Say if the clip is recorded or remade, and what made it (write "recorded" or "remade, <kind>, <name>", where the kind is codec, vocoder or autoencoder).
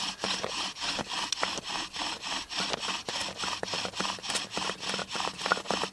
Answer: recorded